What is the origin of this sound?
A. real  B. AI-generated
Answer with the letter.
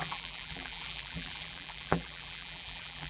B